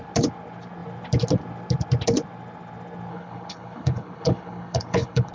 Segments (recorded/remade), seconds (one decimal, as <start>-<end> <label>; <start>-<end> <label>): 0.0-3.1 recorded; 3.1-5.3 remade